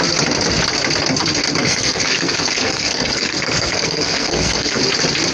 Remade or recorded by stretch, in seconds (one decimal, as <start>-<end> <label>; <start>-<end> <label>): 0.0-1.6 recorded; 1.6-4.8 remade; 4.8-5.3 recorded